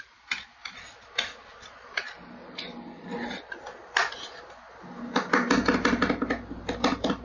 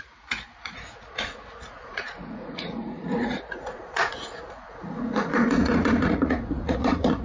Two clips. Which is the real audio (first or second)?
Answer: first